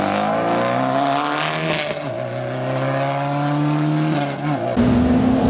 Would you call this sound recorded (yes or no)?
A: yes